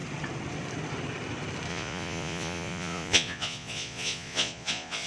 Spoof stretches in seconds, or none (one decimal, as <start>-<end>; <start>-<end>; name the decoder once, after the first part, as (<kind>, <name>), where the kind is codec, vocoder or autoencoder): 1.7-5.1 (vocoder, Vocos)